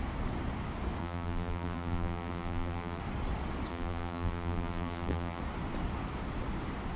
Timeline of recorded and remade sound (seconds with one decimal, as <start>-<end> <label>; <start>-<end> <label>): 0.0-1.0 recorded; 1.0-3.0 remade; 3.0-3.7 recorded; 3.7-5.4 remade; 5.4-7.0 recorded